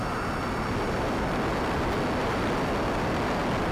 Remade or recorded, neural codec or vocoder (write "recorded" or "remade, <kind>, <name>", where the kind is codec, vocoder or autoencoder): recorded